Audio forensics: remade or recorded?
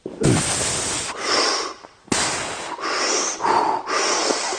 recorded